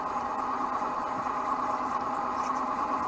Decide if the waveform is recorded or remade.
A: recorded